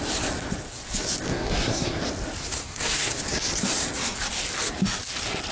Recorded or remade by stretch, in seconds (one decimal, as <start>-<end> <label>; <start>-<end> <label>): 0.0-1.3 recorded; 1.3-2.0 remade; 2.0-2.4 recorded; 2.4-3.1 remade; 3.1-5.5 recorded